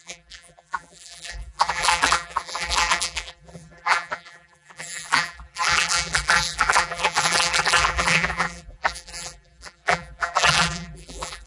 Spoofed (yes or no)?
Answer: yes